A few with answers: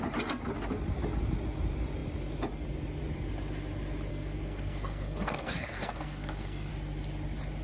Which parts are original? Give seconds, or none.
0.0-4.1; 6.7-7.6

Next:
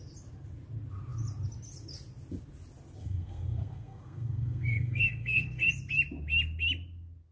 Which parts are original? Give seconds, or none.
0.0-3.0; 5.7-7.3

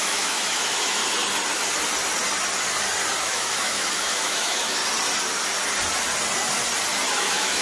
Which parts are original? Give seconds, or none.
1.0-3.2; 4.8-7.1

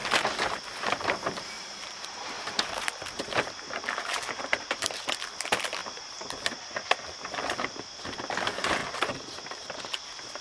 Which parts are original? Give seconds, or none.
5.1-5.8; 6.3-8.8; 9.8-10.4